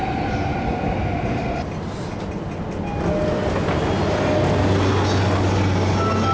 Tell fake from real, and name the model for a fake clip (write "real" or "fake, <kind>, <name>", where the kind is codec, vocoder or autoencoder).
real